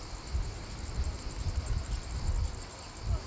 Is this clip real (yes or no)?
yes